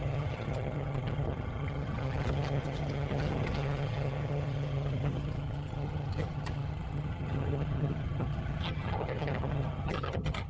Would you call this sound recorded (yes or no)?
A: no